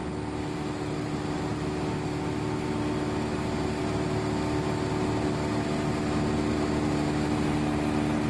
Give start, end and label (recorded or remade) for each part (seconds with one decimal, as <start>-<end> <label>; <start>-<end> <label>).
0.0-8.3 recorded